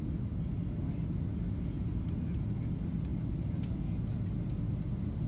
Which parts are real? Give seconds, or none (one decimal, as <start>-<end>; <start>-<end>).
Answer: 0.0-5.3